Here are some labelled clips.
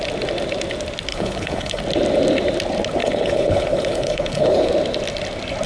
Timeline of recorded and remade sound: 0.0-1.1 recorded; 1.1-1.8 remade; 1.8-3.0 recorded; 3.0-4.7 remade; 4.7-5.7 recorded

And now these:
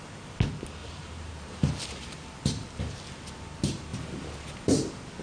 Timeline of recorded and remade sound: 0.0-0.8 recorded; 0.8-2.8 remade; 2.8-5.2 recorded